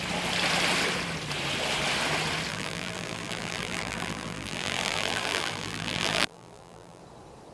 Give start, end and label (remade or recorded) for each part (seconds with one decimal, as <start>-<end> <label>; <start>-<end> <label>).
0.0-2.5 recorded; 2.5-7.0 remade; 7.0-7.5 recorded